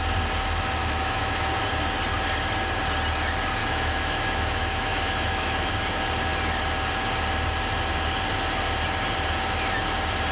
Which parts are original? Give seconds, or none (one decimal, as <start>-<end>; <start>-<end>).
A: 0.0-0.8; 1.5-3.6; 5.7-10.3